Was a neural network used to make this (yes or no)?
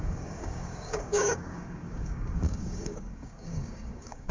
yes